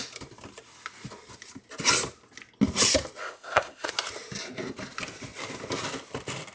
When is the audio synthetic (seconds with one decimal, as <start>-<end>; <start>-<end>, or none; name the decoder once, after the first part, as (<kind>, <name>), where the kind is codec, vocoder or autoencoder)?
3.2-3.9 (codec, ZipCodec)